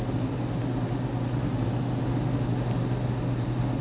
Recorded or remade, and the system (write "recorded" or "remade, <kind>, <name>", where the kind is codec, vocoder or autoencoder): recorded